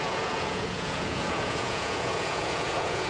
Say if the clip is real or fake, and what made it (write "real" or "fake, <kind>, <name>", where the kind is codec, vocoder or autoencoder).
fake, vocoder, Vocos